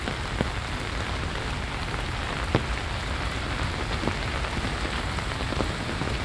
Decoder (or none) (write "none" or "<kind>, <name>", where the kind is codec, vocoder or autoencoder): none